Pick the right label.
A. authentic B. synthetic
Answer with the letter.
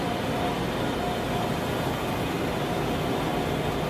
A